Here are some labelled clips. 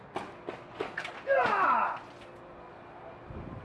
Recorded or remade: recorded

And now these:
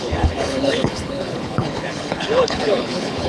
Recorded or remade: remade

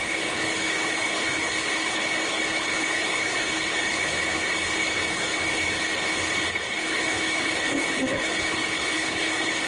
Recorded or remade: remade